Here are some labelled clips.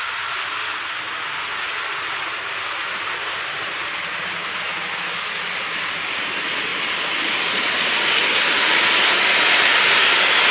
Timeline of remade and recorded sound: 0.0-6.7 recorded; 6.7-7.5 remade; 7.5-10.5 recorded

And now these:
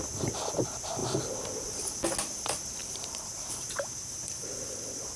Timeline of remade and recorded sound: 0.0-1.0 recorded; 1.0-1.9 remade; 1.9-2.8 recorded; 2.8-4.5 remade; 4.5-5.2 recorded

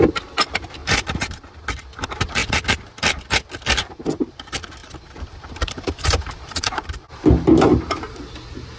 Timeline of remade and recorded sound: 0.0-0.8 recorded; 0.8-1.4 remade; 1.4-4.8 recorded; 4.8-6.9 remade; 6.9-8.8 recorded

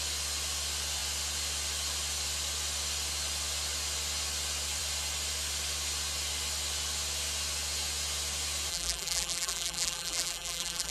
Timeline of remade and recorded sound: 0.0-8.7 recorded; 8.7-10.9 remade

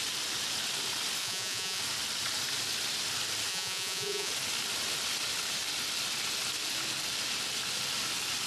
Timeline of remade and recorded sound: 0.0-1.2 recorded; 1.2-1.8 remade; 1.8-3.5 recorded; 3.5-4.3 remade; 4.3-8.5 recorded

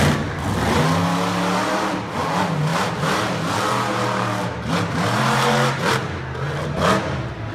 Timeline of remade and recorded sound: 0.0-2.7 recorded; 2.7-6.2 remade; 6.2-7.5 recorded

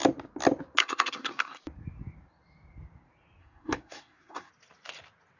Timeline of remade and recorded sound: 0.0-0.8 recorded; 0.8-1.6 remade; 1.6-3.4 recorded; 3.4-4.5 remade; 4.5-5.4 recorded

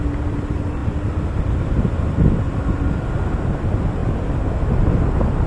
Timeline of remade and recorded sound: 0.0-4.0 remade; 4.0-4.7 recorded; 4.7-5.5 remade